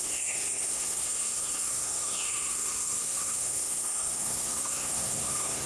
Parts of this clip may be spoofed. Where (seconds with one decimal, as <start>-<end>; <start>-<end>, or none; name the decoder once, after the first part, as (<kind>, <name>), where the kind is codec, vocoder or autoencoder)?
0.0-5.7 (codec, SNAC)

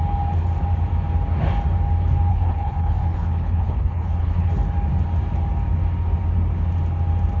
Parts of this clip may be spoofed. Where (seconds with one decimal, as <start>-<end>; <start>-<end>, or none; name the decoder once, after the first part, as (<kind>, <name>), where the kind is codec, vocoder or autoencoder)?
2.3-4.5 (codec, HILCodec)

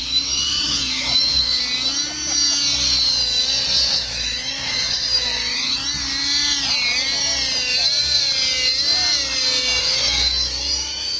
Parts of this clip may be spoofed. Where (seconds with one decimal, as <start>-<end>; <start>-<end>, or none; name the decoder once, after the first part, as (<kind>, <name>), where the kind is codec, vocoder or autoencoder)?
0.0-1.6 (autoencoder, DAC-VAE); 3.9-5.8; 9.8-11.2